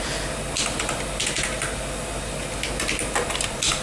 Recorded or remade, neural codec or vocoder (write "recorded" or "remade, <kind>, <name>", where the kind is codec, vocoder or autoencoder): recorded